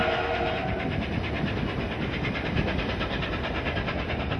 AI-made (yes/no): no